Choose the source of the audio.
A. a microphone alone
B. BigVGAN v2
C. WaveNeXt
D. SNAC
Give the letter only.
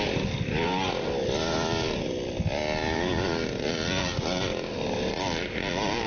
B